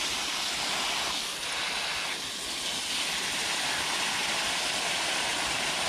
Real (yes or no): yes